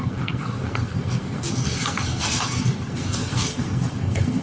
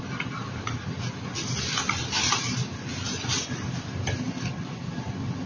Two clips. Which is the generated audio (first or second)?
first